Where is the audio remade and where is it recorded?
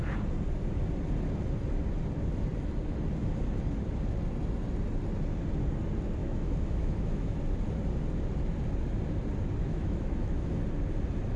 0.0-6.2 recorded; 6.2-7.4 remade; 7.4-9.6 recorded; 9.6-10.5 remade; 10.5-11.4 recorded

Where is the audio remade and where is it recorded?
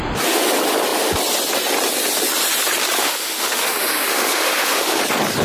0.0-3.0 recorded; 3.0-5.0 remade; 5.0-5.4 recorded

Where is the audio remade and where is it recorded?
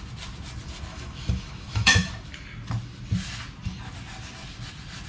0.0-0.9 recorded; 0.9-2.1 remade; 2.1-5.1 recorded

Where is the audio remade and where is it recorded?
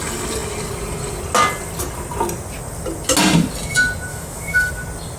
0.0-4.1 recorded; 4.1-4.7 remade; 4.7-5.2 recorded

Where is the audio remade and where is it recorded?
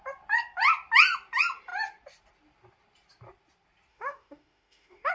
0.0-3.9 recorded; 3.9-5.1 remade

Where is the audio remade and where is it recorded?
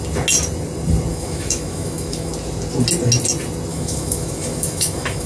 0.0-1.1 recorded; 1.1-2.3 remade; 2.3-3.7 recorded; 3.7-5.3 remade